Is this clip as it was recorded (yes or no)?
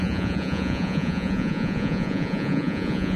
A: no